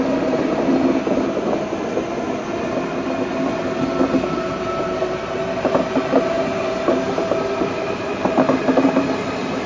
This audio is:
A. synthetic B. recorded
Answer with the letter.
B